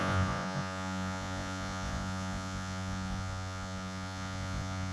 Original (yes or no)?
no